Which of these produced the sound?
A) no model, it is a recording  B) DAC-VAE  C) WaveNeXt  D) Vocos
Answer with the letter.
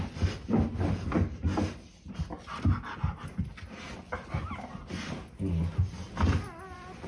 A